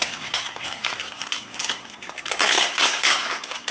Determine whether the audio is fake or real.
fake